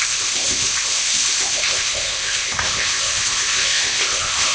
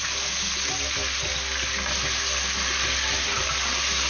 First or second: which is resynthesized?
first